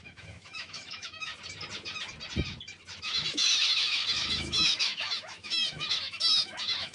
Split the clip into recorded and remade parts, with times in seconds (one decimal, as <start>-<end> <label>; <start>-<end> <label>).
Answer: 0.0-1.3 remade; 1.3-3.0 recorded; 3.0-6.9 remade